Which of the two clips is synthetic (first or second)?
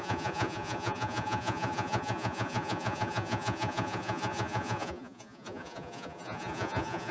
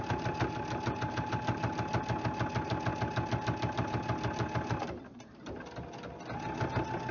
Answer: first